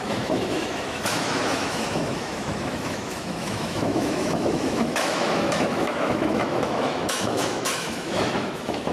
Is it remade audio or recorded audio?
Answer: remade